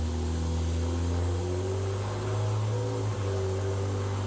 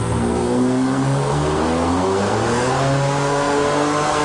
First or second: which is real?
first